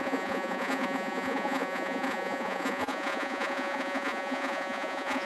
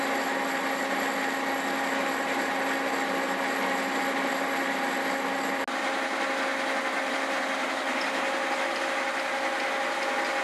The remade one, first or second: first